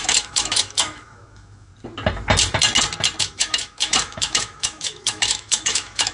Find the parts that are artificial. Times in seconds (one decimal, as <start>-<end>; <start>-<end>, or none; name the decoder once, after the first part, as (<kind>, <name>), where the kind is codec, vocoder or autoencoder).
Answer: 0.0-1.7 (autoencoder, DAC-VAE); 3.2-6.1